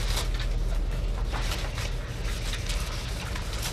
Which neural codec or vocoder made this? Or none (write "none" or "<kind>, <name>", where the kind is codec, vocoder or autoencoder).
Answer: none